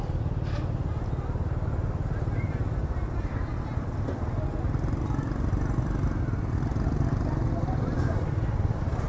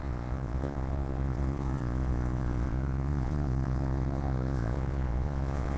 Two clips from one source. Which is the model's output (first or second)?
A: second